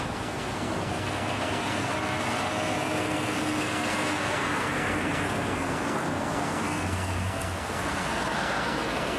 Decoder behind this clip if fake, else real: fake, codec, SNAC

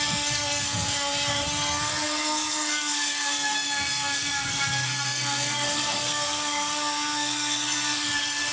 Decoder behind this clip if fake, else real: fake, codec, SNAC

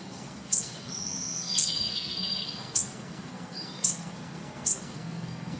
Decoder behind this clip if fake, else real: fake, codec, SNAC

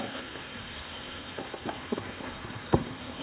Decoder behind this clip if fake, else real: fake, codec, SNAC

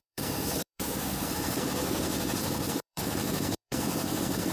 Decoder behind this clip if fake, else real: fake, codec, SNAC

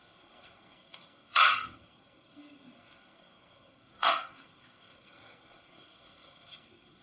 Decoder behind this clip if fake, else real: fake, codec, SNAC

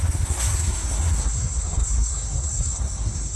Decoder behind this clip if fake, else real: fake, codec, SNAC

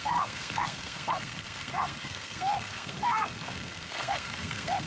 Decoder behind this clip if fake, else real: fake, codec, SNAC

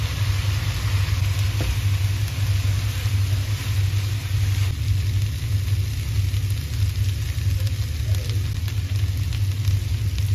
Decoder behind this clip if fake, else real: real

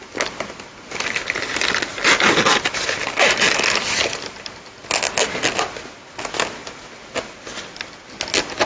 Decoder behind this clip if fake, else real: real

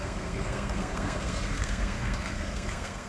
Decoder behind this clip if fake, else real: fake, codec, SNAC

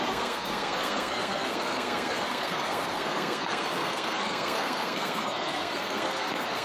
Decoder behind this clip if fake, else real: fake, codec, SNAC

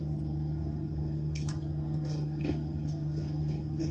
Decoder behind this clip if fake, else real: fake, codec, SNAC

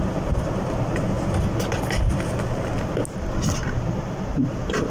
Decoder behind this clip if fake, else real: real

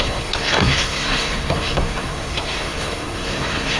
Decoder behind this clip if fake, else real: fake, codec, SNAC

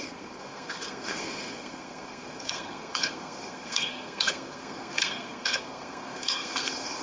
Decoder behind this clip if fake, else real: fake, codec, SNAC